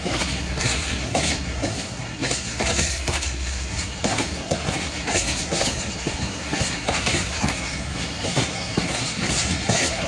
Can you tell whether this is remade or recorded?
remade